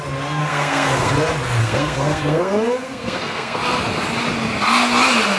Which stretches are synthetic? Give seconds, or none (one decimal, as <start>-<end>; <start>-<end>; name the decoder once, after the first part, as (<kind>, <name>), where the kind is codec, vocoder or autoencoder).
0.4-1.1 (codec, SNAC); 1.6-3.6